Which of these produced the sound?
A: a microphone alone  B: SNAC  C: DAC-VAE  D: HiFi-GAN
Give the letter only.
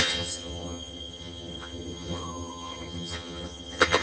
D